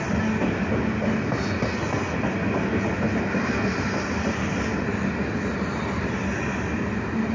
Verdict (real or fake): real